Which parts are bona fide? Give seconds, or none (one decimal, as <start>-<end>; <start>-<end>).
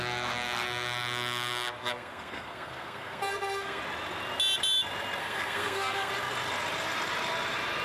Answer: 0.0-1.8; 3.8-5.2; 6.1-7.8